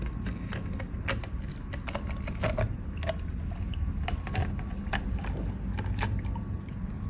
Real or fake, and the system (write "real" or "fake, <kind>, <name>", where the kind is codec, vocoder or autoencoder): real